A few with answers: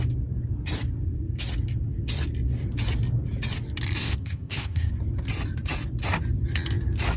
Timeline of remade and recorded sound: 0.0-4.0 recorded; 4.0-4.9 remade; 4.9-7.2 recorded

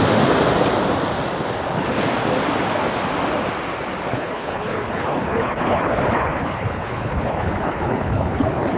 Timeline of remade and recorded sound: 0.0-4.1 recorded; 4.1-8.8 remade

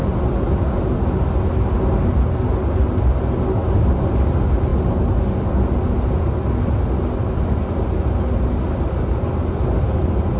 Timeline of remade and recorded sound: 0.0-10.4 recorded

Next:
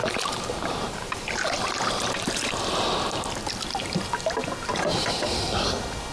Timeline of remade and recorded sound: 0.0-6.1 recorded

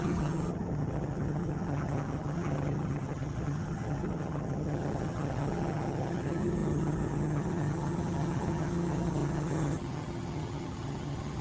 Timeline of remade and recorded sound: 0.0-11.4 remade

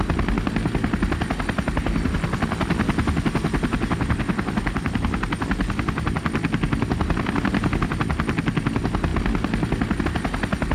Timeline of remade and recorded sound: 0.0-10.7 recorded

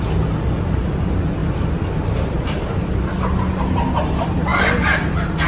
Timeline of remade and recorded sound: 0.0-1.4 recorded; 1.4-2.9 remade; 2.9-4.5 recorded; 4.5-5.1 remade; 5.1-5.5 recorded

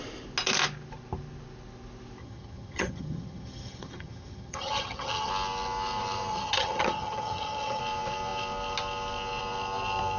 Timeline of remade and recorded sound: 0.0-2.2 recorded; 2.2-5.3 remade; 5.3-6.3 recorded; 6.3-7.8 remade; 7.8-10.2 recorded